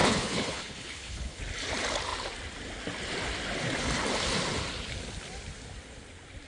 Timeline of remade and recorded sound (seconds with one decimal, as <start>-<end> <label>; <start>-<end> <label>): 0.0-1.4 remade; 1.4-6.5 recorded